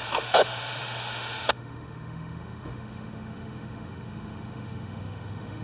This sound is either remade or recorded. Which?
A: remade